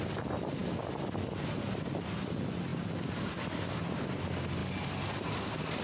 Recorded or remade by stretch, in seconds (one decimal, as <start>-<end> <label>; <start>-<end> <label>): 0.0-5.8 recorded